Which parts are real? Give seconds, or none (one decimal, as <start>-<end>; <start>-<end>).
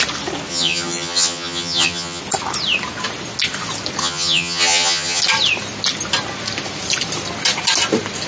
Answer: 0.0-0.5; 2.2-4.0; 5.2-8.3